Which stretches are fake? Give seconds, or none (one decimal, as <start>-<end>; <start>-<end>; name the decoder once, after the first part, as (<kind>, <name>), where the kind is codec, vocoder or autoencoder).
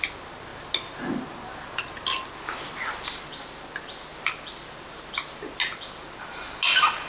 none